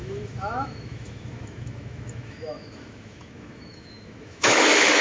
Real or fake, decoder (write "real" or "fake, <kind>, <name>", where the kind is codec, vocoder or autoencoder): fake, autoencoder, DAC-VAE